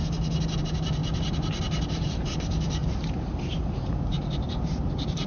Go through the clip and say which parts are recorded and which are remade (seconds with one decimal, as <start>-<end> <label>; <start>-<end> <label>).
0.0-0.6 recorded; 0.6-5.3 remade